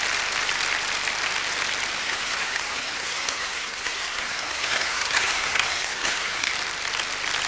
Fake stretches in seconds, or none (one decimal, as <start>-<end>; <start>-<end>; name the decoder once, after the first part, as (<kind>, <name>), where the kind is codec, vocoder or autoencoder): 2.0-6.5 (codec, SNAC)